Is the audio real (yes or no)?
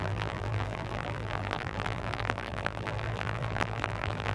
no